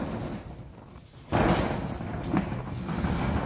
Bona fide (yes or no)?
yes